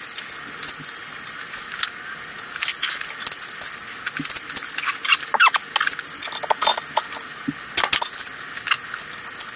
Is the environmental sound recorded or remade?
recorded